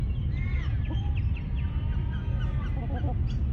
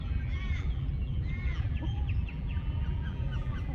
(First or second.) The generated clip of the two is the second